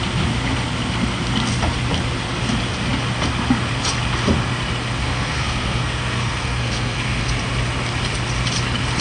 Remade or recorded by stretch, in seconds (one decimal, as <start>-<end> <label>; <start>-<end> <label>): 0.0-5.0 recorded; 5.0-7.2 remade; 7.2-9.0 recorded